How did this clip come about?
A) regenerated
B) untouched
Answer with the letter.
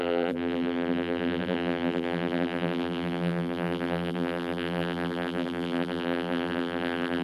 A